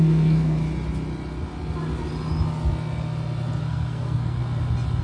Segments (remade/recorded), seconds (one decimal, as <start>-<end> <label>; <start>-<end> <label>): 0.0-0.6 remade; 0.6-3.6 recorded; 3.6-4.4 remade; 4.4-5.0 recorded